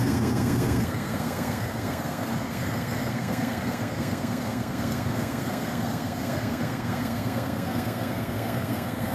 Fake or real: fake